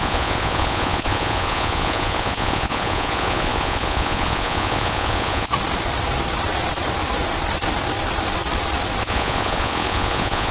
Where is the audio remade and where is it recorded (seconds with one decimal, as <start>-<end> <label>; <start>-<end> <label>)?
0.0-5.5 remade; 5.5-9.0 recorded; 9.0-10.5 remade